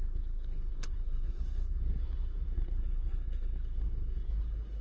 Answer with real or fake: fake